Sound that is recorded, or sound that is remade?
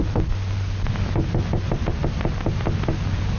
recorded